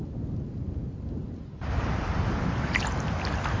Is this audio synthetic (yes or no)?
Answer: no